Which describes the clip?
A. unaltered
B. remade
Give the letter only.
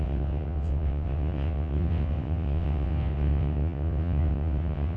B